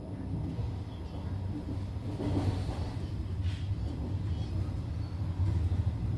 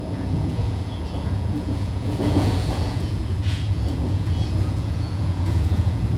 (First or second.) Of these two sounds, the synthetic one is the second